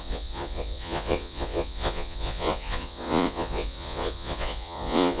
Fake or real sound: fake